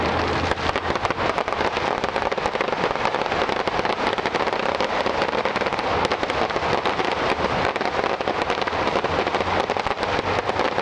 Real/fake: real